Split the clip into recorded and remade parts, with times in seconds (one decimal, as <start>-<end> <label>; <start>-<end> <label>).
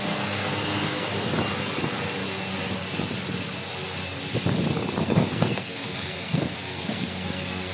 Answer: 0.0-1.1 remade; 1.1-5.0 recorded; 5.0-7.7 remade